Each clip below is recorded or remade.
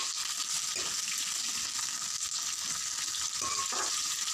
recorded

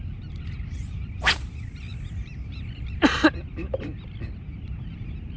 recorded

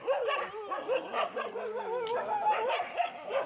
recorded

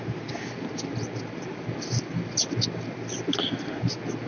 recorded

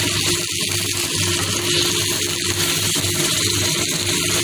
recorded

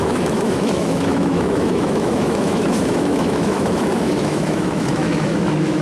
remade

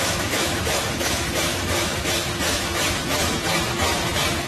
remade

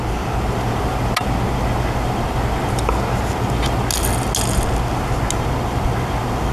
recorded